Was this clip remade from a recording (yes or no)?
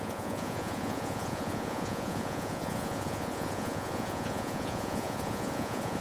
yes